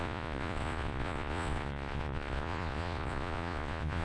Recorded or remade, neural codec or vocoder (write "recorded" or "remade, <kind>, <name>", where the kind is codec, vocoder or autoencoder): remade, vocoder, Vocos